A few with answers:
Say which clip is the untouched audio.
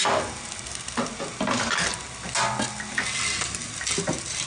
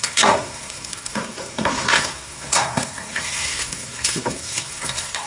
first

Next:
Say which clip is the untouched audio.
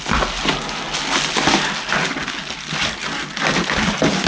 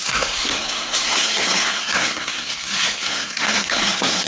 first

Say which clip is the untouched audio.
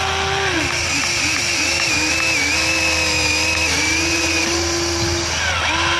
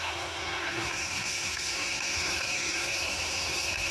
first